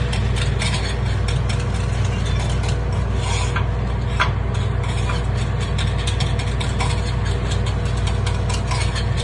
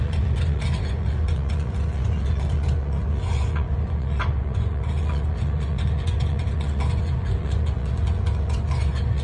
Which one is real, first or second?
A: first